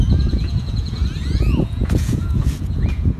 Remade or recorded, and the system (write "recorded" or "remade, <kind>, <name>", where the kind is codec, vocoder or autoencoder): remade, vocoder, Vocos